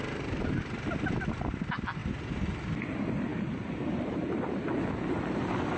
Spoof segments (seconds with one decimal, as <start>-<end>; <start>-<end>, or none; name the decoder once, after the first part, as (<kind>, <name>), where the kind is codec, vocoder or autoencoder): none